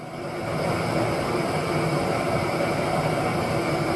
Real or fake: real